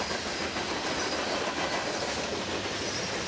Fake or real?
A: real